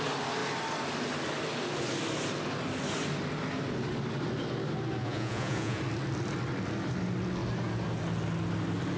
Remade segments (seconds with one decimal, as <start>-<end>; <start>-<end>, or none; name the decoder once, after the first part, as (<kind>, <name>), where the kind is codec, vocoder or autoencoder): 5.0-5.8 (vocoder, Vocos)